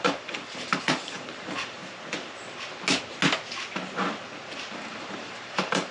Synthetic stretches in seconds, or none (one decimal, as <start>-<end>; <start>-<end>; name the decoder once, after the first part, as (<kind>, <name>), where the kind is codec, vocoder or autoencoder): 0.0-1.8 (vocoder, BigVGAN v2); 4.7-5.9